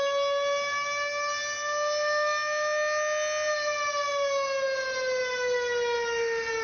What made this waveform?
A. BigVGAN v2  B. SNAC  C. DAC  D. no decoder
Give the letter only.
D